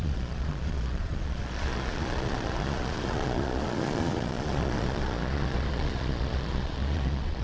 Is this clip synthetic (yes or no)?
yes